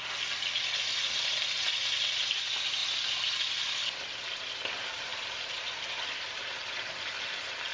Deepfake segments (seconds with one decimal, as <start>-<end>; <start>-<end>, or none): none